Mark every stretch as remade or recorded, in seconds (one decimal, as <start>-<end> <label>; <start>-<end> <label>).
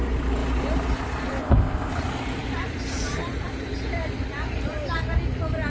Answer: 0.0-1.4 recorded; 1.4-1.9 remade; 1.9-5.7 recorded